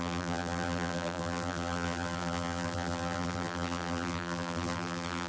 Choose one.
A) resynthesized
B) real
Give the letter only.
A